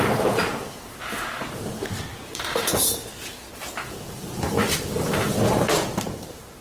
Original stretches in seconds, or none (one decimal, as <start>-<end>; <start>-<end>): 3.0-4.2